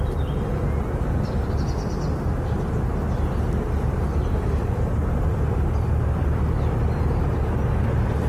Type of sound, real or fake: real